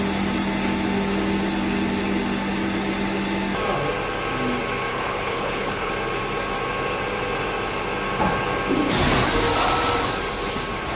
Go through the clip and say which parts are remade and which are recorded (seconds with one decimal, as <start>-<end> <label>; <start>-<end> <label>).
0.0-4.9 recorded; 4.9-5.9 remade; 5.9-10.9 recorded

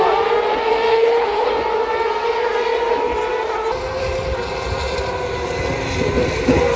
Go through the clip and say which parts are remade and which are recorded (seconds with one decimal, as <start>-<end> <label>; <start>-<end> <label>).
0.0-0.9 recorded; 0.9-1.5 remade; 1.5-6.8 recorded

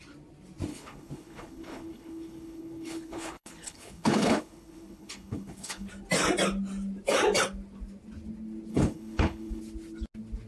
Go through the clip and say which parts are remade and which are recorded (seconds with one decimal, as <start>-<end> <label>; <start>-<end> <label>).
0.0-0.7 recorded; 0.7-5.9 remade; 5.9-8.7 recorded; 8.7-9.6 remade; 9.6-10.5 recorded

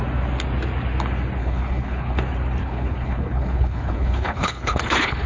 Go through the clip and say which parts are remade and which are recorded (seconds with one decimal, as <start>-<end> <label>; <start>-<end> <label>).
0.0-1.4 recorded; 1.4-2.2 remade; 2.2-2.6 recorded; 2.6-5.3 remade

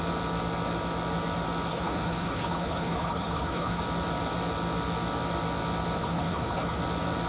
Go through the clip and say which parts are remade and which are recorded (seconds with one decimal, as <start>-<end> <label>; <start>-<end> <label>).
0.0-1.7 recorded; 1.7-3.8 remade; 3.8-6.0 recorded; 6.0-6.8 remade; 6.8-7.3 recorded

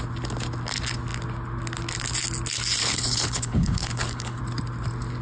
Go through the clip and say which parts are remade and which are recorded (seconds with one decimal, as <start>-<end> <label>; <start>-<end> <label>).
0.0-2.8 recorded; 2.8-4.4 remade; 4.4-5.2 recorded